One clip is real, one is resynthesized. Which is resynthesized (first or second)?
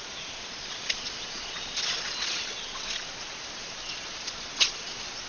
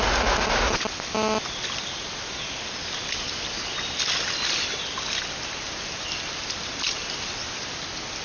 first